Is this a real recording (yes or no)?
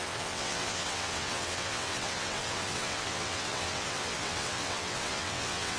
no